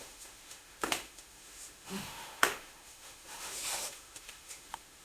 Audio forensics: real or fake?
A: fake